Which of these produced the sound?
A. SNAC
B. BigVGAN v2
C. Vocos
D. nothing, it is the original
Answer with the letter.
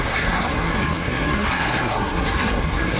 A